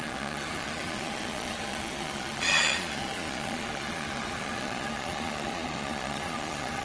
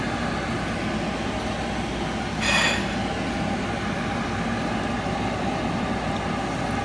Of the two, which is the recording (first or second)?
second